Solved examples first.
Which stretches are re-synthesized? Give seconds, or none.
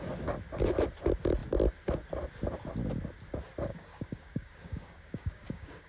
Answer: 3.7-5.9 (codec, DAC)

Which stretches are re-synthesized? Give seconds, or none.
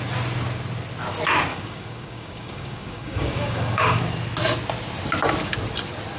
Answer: 1.5-4.0 (codec, DAC)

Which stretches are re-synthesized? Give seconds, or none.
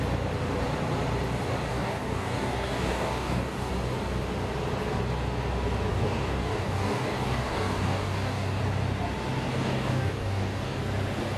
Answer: 1.7-3.7 (codec, DAC); 5.9-8.6; 9.5-10.8